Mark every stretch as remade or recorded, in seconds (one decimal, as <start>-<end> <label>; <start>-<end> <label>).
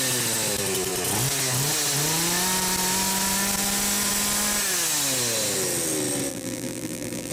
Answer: 0.0-6.3 recorded; 6.3-7.3 remade